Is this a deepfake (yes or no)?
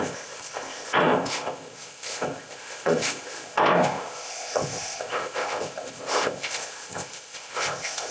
yes